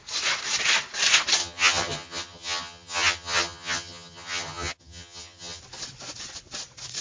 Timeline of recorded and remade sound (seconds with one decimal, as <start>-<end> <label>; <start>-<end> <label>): 0.0-1.4 recorded; 1.4-5.6 remade; 5.6-7.0 recorded